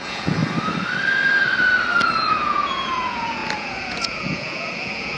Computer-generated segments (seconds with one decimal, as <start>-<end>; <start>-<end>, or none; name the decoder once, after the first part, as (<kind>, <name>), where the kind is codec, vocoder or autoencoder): 0.0-0.4 (vocoder, Vocos); 2.3-5.2

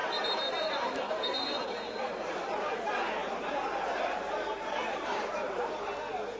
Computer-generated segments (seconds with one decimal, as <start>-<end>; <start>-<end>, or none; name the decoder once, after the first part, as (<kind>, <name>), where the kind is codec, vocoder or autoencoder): 0.0-2.7 (vocoder, BigVGAN v2); 3.2-5.9

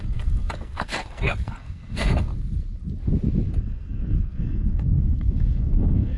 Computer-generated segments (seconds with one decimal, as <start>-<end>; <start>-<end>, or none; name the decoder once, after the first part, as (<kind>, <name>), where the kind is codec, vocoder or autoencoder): 0.0-2.3 (codec, SNAC); 3.6-6.2

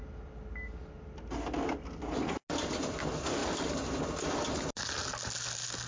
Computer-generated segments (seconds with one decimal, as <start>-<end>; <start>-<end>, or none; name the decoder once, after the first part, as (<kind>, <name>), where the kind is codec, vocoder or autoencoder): none

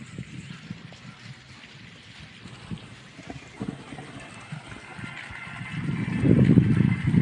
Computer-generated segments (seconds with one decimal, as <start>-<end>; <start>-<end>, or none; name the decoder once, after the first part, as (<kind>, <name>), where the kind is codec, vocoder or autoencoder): none

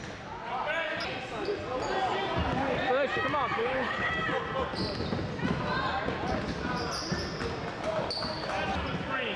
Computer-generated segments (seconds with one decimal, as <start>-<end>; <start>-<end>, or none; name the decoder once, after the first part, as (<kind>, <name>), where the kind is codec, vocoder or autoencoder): 3.6-4.1 (codec, HILCodec)